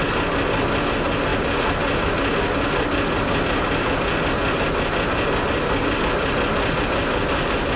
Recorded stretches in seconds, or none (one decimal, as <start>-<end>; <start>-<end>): 0.0-7.8